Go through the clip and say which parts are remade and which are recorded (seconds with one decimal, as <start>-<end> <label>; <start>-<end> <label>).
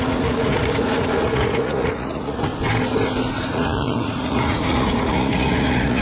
0.0-2.5 remade; 2.5-3.5 recorded; 3.5-6.0 remade